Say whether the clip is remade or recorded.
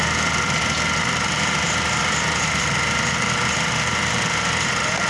remade